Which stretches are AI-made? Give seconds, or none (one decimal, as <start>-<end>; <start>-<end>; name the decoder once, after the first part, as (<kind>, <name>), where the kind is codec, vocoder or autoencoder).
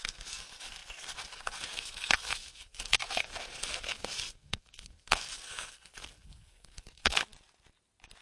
0.0-7.2 (codec, SNAC)